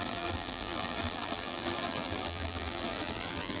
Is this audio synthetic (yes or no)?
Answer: yes